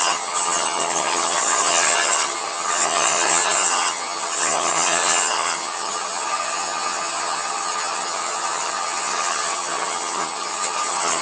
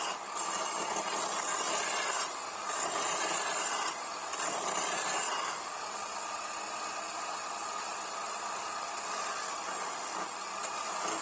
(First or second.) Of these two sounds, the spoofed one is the first